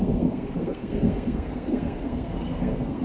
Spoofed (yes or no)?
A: yes